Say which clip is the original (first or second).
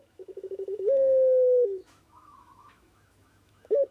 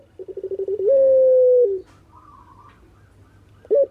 second